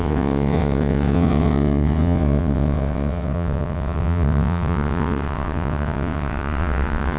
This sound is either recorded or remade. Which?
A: remade